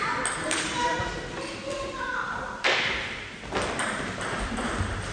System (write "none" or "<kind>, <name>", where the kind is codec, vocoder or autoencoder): none